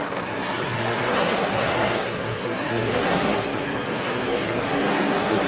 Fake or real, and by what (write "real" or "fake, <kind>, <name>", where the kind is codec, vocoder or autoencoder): fake, codec, SNAC